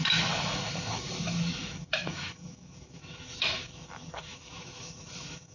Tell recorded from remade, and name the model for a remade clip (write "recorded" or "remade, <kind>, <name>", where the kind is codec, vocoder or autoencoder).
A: remade, autoencoder, DAC-VAE